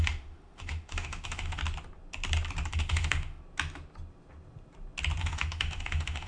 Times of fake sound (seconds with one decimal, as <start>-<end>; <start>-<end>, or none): 0.0-1.6; 2.7-3.4; 5.2-6.3